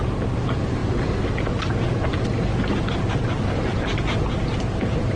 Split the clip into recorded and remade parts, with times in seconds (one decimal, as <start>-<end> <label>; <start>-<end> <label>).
0.0-5.2 recorded